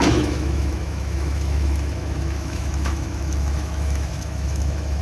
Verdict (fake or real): fake